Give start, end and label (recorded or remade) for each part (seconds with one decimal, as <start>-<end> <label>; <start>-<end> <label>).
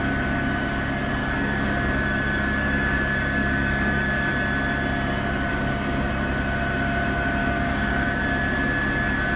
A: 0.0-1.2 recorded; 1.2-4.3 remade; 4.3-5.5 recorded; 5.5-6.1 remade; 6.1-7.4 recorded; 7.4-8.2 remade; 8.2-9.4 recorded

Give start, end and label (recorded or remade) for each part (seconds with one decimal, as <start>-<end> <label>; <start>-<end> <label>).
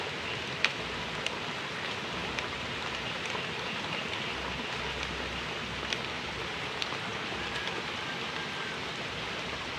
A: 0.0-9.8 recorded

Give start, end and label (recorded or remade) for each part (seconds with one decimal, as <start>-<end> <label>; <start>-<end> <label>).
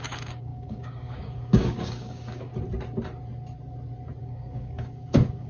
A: 0.0-2.5 remade; 2.5-4.2 recorded; 4.2-5.5 remade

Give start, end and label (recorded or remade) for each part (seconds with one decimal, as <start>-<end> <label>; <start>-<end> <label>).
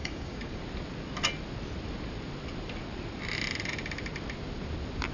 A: 0.0-0.6 remade; 0.6-5.1 recorded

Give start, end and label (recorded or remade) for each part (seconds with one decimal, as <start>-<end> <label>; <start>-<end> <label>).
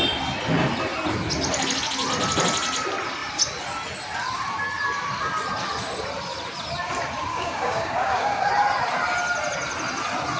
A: 0.0-7.3 recorded; 7.3-8.5 remade; 8.5-10.4 recorded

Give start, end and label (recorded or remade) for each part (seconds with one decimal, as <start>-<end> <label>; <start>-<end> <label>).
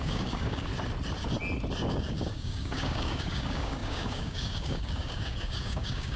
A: 0.0-0.7 remade; 0.7-1.9 recorded; 1.9-6.2 remade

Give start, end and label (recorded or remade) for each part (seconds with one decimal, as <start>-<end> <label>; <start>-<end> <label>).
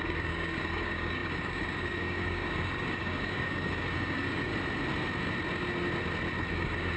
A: 0.0-4.5 remade; 4.5-6.5 recorded; 6.5-7.0 remade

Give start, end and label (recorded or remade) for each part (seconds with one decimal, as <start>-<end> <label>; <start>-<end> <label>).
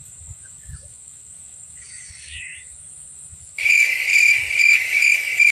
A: 0.0-4.1 remade; 4.1-4.6 recorded; 4.6-5.5 remade